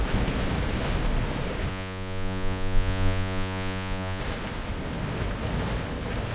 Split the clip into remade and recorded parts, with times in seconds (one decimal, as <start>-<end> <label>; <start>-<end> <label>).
0.0-1.7 recorded; 1.7-4.2 remade; 4.2-6.3 recorded

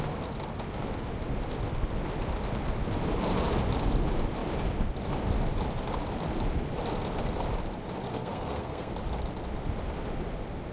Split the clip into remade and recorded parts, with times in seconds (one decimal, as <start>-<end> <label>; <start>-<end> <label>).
0.0-8.1 recorded; 8.1-8.9 remade; 8.9-10.7 recorded

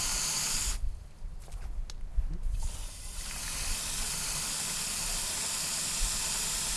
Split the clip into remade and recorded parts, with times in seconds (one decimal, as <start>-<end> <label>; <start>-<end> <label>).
0.0-6.8 recorded

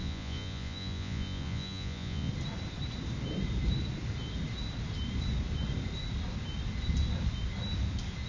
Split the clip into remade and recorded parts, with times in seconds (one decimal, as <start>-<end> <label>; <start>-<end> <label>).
0.0-2.3 remade; 2.3-8.3 recorded

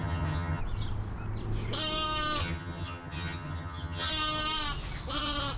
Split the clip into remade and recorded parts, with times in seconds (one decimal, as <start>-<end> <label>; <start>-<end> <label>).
0.0-0.6 remade; 0.6-2.4 recorded; 2.4-4.1 remade; 4.1-5.6 recorded

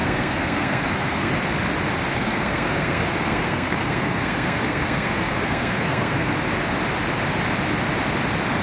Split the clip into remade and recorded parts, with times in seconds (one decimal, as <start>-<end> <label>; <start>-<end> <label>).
0.0-1.3 remade; 1.3-2.1 recorded; 2.1-6.3 remade; 6.3-8.6 recorded

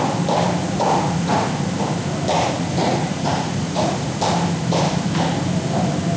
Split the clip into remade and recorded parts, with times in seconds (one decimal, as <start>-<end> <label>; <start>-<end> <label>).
0.0-0.6 recorded; 0.6-1.5 remade; 1.5-2.8 recorded; 2.8-4.2 remade; 4.2-6.2 recorded

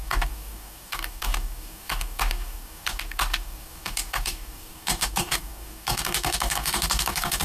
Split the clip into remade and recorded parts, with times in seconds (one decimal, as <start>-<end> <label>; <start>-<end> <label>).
0.0-7.4 remade